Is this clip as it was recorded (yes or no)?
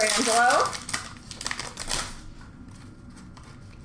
yes